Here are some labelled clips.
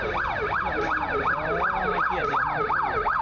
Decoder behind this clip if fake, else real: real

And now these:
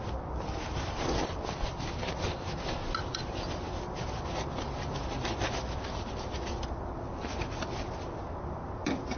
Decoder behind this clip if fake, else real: real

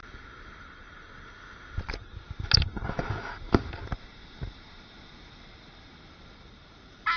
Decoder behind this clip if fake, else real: real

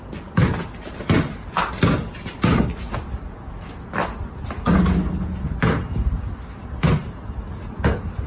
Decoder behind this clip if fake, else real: real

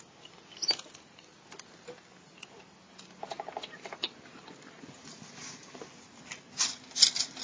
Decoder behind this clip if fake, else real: real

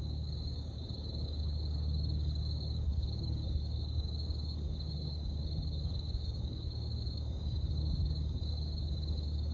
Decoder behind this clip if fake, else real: fake, codec, DAC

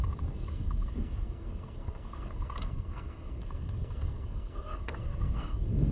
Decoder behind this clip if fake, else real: fake, codec, SNAC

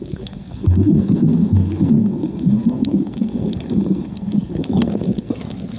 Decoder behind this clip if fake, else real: fake, codec, SNAC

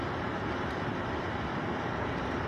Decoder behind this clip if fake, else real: real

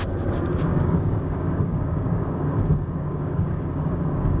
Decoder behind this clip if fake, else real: fake, codec, DAC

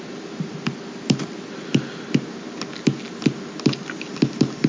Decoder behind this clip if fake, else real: real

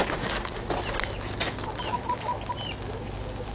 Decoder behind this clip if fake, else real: real